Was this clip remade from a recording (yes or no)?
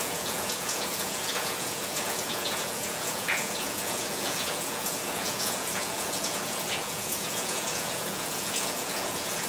yes